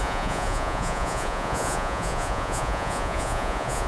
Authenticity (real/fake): fake